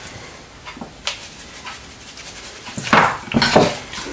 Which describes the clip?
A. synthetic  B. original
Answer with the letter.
B